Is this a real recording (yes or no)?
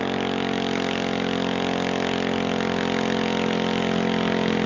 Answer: yes